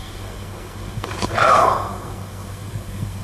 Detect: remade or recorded remade